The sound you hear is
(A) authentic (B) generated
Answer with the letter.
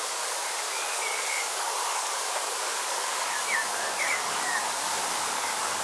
B